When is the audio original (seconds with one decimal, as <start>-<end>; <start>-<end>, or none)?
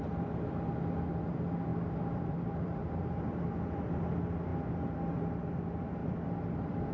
0.0-1.7; 3.0-6.0